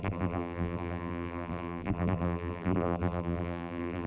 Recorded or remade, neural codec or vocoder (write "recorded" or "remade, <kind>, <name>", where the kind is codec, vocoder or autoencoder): remade, vocoder, BigVGAN v2